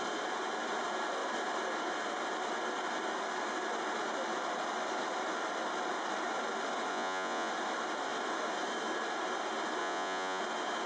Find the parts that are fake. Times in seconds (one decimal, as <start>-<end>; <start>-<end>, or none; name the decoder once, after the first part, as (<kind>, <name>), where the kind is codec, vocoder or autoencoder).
6.9-7.5 (vocoder, Vocos); 9.8-10.4